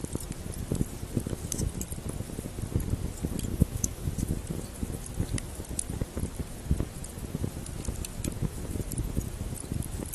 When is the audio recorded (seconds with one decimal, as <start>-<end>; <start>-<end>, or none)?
0.0-3.5; 4.1-10.1